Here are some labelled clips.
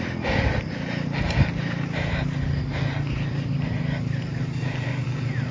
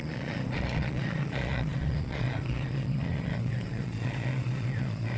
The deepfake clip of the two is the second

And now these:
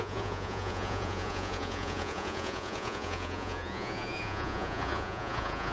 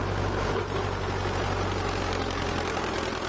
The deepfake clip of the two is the first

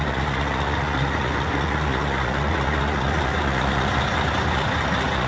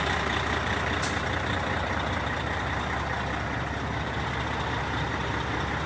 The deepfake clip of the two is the first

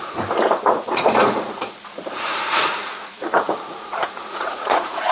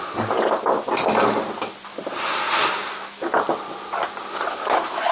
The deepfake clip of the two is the first